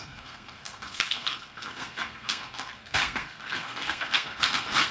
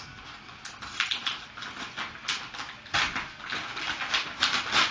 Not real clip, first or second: first